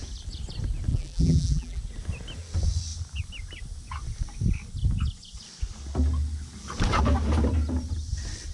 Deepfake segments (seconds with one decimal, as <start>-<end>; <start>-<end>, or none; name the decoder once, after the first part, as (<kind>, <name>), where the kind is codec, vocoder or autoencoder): 0.9-1.8 (vocoder, BigVGAN v2)